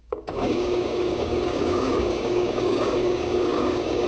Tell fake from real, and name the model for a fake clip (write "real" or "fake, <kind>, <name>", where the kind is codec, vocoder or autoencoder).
fake, codec, DAC